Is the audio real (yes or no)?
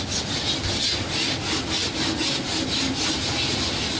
yes